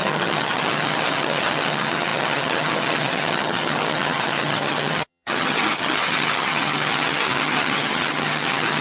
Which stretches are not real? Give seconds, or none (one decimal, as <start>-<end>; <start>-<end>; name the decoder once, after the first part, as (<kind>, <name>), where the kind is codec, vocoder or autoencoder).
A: 0.0-8.8 (vocoder, HiFi-GAN)